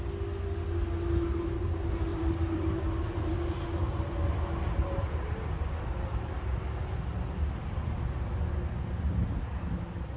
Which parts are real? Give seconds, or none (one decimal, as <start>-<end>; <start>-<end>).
0.0-2.1; 3.2-10.2